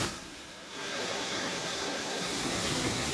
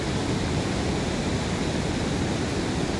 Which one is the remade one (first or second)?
first